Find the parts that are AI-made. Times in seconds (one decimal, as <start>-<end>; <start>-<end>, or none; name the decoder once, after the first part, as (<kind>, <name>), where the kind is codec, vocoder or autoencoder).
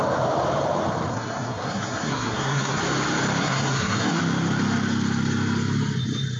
1.1-2.8 (codec, SNAC); 3.4-4.2